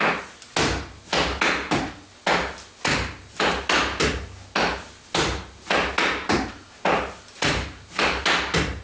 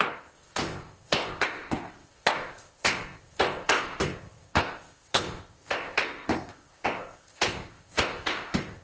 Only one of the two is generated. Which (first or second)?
second